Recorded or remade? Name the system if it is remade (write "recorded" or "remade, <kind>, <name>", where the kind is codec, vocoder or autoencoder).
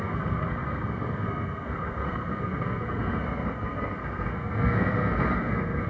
remade, codec, SNAC